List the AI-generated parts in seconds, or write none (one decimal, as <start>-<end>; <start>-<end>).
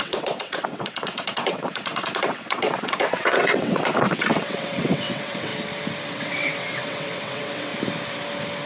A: 0.0-5.5; 6.1-7.7